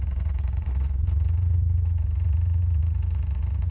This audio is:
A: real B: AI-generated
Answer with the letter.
B